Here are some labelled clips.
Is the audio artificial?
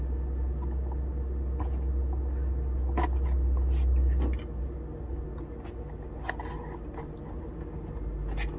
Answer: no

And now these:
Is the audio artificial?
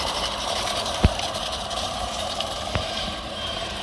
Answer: yes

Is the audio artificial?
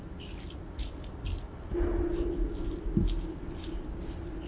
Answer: no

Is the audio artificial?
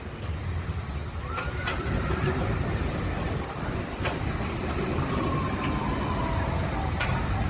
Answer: no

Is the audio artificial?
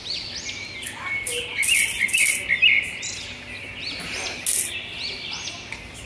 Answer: no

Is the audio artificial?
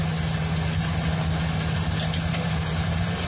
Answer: no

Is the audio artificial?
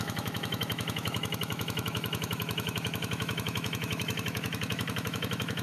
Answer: yes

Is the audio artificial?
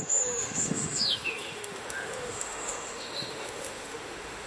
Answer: yes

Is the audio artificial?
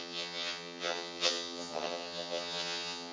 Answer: yes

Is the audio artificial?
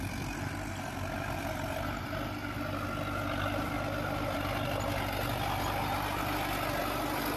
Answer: no